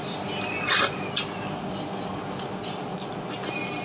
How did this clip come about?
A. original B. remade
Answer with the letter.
A